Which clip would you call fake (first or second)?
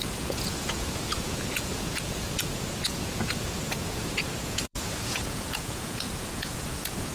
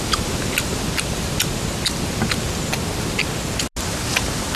first